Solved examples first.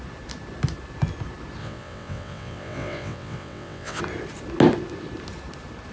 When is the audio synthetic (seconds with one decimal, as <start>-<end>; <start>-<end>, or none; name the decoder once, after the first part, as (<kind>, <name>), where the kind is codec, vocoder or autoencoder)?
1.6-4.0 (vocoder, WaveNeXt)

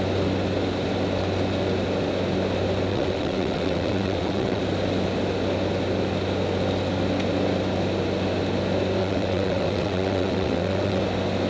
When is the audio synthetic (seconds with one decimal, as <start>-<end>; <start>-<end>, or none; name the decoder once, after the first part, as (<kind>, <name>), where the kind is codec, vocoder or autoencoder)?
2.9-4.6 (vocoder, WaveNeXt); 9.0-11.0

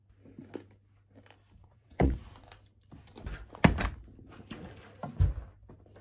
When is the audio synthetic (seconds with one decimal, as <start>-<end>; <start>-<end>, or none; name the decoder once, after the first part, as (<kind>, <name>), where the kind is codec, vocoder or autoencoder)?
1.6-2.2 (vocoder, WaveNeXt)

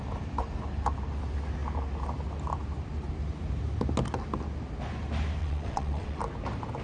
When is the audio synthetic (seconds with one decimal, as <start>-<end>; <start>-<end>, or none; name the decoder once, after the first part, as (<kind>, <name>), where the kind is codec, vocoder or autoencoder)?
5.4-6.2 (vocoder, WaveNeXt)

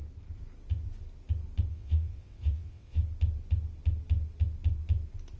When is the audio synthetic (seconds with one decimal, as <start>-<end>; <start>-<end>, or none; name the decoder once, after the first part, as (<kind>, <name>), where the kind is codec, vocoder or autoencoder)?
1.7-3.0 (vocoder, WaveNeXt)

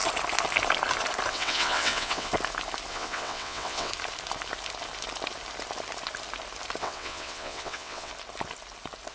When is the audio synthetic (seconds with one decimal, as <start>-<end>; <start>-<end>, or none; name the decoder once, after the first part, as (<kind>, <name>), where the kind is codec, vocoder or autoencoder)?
1.3-2.3 (vocoder, WaveNeXt); 2.9-3.9; 6.8-8.1

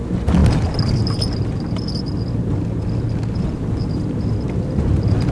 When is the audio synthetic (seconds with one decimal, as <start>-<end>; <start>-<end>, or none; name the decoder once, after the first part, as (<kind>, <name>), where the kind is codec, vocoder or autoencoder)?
none